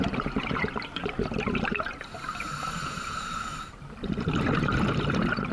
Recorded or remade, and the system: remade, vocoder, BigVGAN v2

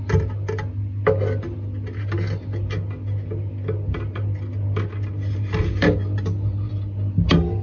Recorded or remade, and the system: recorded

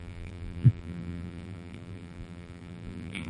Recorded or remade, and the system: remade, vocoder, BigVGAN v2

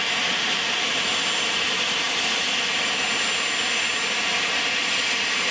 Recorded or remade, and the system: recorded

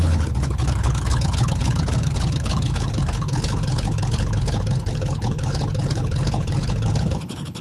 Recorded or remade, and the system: remade, codec, HILCodec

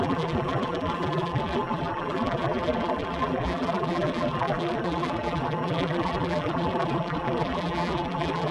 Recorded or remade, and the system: remade, vocoder, BigVGAN v2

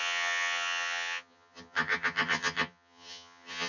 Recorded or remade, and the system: remade, vocoder, HiFi-GAN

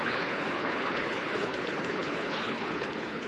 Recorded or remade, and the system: remade, codec, HILCodec